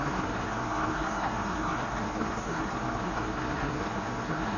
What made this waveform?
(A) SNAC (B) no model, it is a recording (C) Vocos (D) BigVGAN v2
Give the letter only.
A